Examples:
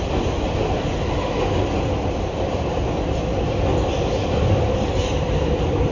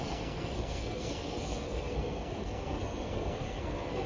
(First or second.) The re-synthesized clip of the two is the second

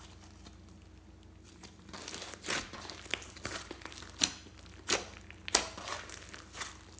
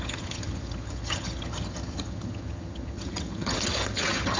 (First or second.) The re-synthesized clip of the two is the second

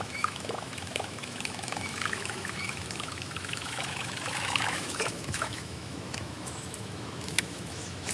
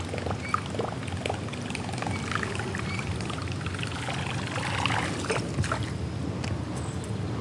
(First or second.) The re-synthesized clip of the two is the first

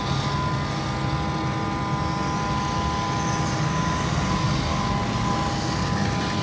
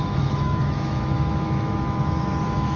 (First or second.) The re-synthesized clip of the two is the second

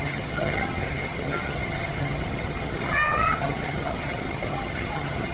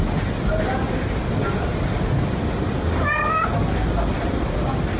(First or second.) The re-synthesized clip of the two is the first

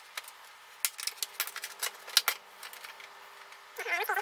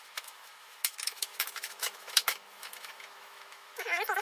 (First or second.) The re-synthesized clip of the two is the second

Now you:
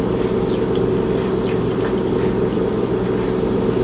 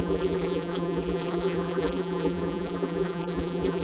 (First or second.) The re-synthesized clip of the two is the second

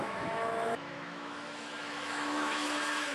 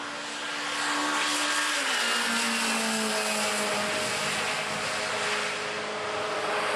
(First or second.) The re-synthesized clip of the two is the first